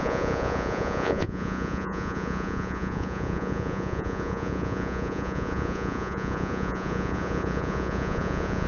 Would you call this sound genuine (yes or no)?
no